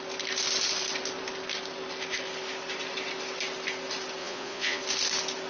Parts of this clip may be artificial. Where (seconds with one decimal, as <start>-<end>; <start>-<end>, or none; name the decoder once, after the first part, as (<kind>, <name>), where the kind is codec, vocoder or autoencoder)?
4.2-4.8 (vocoder, Vocos)